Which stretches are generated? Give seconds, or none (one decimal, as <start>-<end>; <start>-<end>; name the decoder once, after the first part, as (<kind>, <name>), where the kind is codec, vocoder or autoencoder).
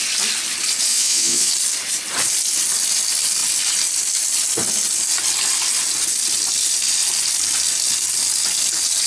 0.9-1.5 (vocoder, Vocos)